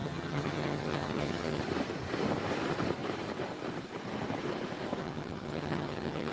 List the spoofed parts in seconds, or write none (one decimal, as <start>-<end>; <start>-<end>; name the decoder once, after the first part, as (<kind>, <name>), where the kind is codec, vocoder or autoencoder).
0.0-1.6 (vocoder, HiFi-GAN); 5.0-6.3